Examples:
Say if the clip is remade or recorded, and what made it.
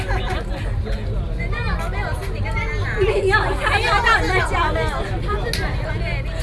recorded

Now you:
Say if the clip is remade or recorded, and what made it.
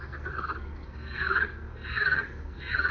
remade, codec, SNAC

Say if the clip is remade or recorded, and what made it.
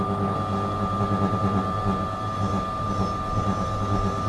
recorded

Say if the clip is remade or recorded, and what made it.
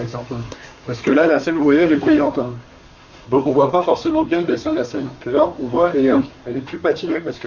remade, codec, SNAC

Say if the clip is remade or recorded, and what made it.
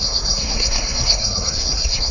remade, codec, SNAC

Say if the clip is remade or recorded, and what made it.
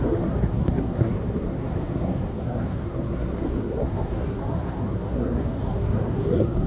remade, codec, SNAC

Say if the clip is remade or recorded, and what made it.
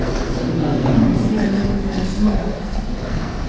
remade, codec, SNAC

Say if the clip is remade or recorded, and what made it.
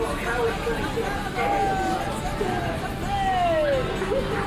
recorded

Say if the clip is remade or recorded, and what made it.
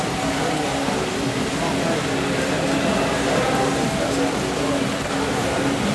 recorded